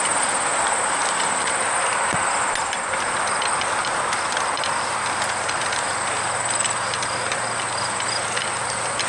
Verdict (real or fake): real